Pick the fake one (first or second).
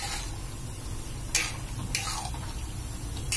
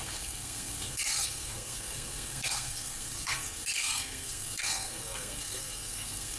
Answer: second